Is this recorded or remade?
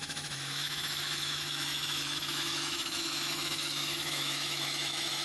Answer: remade